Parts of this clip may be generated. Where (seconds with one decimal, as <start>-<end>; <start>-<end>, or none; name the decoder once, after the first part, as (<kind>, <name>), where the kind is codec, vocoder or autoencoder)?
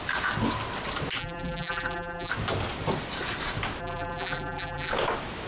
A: 1.2-2.3 (vocoder, BigVGAN v2); 3.8-4.9